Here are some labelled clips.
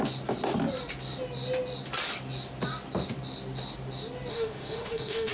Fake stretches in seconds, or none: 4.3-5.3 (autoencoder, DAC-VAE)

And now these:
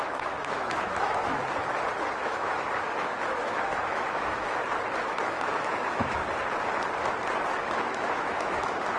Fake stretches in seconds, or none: 0.0-1.4 (autoencoder, DAC-VAE); 2.1-4.6; 5.2-6.2; 7.6-9.0

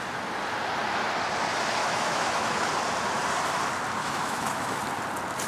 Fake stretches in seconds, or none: 1.8-2.7 (autoencoder, DAC-VAE); 4.0-4.8